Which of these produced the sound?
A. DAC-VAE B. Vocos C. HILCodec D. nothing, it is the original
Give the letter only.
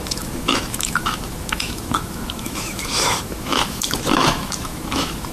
A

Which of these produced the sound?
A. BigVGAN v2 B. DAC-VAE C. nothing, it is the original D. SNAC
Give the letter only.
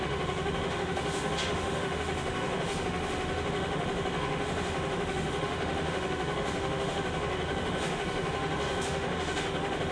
B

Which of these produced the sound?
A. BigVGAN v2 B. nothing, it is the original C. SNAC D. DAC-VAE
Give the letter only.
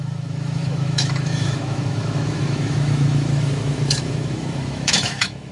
D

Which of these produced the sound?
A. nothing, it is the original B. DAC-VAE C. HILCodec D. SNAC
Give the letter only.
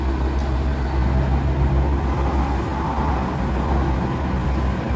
A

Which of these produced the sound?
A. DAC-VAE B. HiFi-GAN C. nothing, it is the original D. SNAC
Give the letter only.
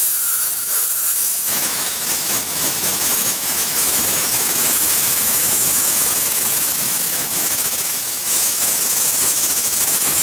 A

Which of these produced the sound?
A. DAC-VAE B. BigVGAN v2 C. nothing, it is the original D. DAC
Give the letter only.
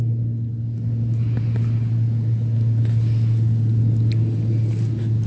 C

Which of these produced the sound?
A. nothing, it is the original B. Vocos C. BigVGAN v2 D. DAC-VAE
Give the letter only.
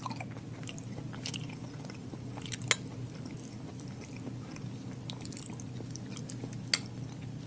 A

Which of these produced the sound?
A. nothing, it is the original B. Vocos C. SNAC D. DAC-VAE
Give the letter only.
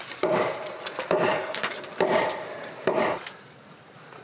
A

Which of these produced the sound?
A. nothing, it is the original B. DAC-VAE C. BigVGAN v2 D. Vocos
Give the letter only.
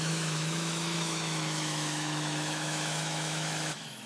B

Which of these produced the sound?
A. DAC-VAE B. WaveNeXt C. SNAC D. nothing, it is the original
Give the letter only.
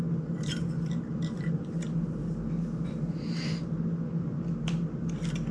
D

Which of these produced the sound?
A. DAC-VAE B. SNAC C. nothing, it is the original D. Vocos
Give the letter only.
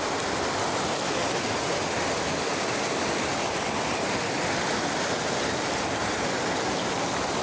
C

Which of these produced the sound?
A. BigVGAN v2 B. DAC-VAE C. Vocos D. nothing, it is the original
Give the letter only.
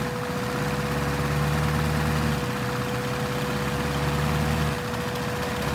D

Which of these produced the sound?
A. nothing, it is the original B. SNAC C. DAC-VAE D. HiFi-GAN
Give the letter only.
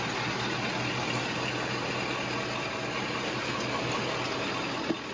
A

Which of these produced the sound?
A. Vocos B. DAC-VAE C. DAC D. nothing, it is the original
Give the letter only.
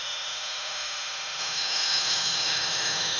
B